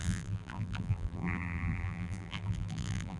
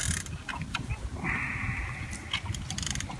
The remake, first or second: first